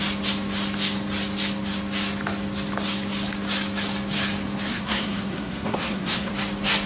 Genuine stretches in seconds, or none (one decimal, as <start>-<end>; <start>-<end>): 0.0-4.7; 6.3-6.9